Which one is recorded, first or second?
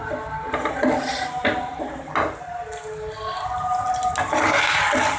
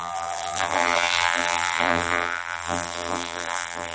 first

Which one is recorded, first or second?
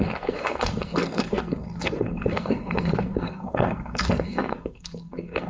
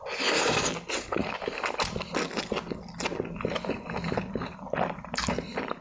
second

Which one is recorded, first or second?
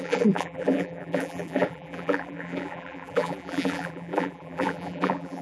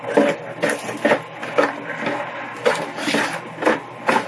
second